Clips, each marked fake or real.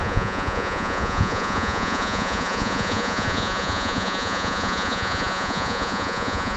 fake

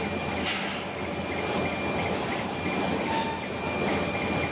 real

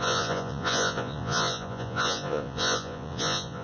fake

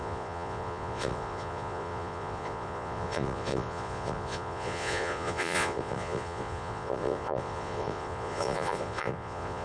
fake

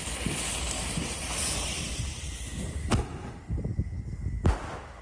real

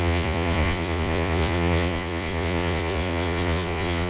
fake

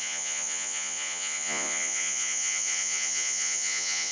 fake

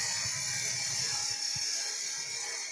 real